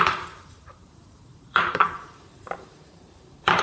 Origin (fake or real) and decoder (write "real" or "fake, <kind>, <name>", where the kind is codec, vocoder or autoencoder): fake, vocoder, BigVGAN v2